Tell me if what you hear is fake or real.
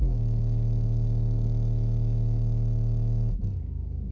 fake